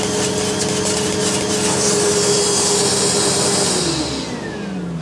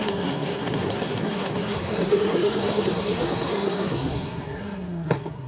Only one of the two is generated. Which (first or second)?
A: second